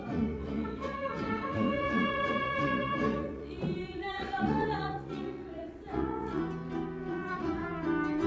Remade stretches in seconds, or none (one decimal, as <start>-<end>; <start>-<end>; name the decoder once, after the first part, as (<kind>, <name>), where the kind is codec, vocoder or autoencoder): 0.0-6.4 (vocoder, Vocos); 7.1-7.6